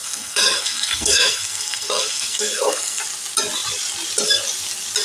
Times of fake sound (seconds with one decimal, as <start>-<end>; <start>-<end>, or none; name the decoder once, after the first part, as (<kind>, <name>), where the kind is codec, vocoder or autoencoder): 0.0-3.0 (codec, SNAC)